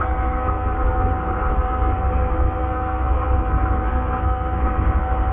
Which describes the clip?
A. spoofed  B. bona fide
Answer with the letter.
A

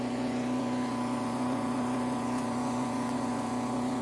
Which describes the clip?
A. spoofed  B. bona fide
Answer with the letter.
A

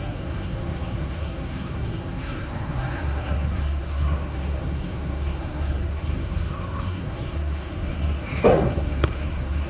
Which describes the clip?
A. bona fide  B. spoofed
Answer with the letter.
B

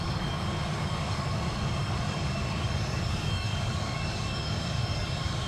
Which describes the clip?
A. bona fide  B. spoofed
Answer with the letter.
B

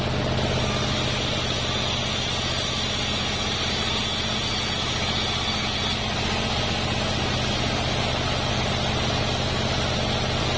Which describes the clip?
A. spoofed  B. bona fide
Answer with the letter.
B